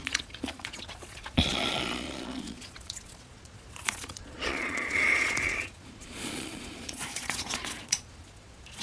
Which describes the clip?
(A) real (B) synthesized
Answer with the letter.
B